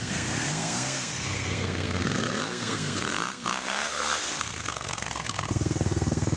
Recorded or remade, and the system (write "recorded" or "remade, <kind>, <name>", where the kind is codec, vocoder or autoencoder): remade, codec, SNAC